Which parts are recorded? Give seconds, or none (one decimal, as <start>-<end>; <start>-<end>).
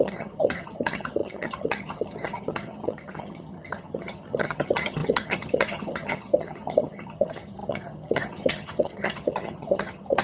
none